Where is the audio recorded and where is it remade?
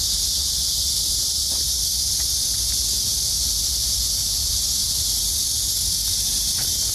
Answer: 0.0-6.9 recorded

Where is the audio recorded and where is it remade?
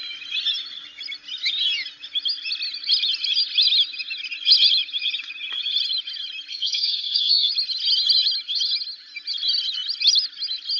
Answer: 0.0-6.5 recorded; 6.5-7.5 remade; 7.5-10.8 recorded